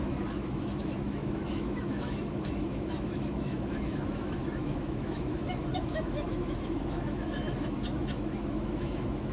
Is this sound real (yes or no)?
no